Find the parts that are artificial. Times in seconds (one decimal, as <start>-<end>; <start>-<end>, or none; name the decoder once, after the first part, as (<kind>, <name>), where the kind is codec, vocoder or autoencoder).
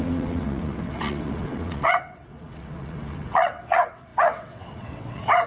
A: 0.0-5.5 (vocoder, WaveNeXt)